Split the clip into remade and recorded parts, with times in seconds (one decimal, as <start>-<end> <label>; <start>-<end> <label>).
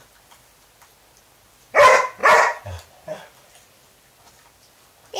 0.0-2.2 recorded; 2.2-2.9 remade; 2.9-5.2 recorded